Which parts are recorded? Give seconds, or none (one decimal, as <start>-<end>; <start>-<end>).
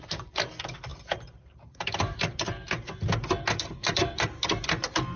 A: 0.0-0.9; 2.2-5.2